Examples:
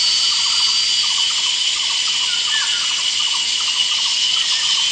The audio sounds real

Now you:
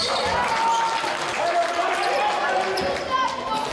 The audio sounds real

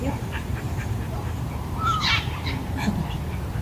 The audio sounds fake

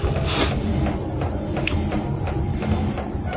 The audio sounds real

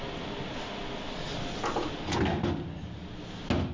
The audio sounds real